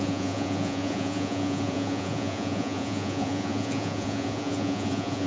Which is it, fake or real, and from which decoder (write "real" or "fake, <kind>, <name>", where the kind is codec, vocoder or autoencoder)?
fake, vocoder, Vocos